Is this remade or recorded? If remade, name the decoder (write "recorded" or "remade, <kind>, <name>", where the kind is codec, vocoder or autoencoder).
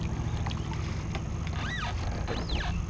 recorded